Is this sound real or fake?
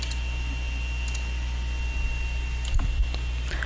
real